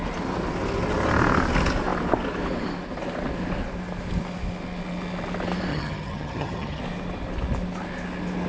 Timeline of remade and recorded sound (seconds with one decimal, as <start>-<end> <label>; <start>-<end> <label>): 0.0-5.7 recorded; 5.7-6.8 remade; 6.8-8.5 recorded